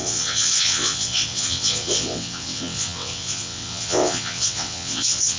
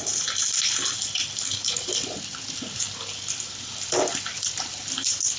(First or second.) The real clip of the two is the second